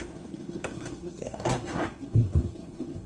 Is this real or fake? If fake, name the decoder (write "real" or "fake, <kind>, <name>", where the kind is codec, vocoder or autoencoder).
fake, codec, SNAC